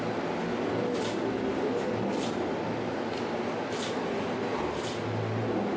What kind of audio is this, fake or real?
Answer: real